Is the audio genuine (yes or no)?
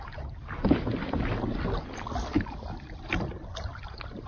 yes